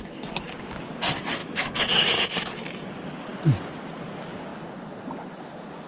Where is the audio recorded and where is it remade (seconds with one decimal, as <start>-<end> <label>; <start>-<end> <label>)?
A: 0.0-1.4 recorded; 1.4-2.6 remade; 2.6-5.9 recorded